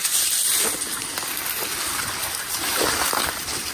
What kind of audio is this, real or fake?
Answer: real